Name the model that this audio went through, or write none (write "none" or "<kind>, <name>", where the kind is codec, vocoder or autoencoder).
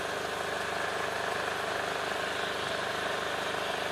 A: none